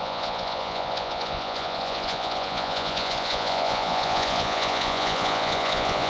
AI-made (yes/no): yes